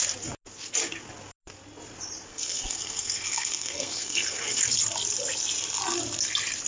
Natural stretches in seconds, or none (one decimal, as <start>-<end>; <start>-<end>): 0.0-2.3; 4.6-6.7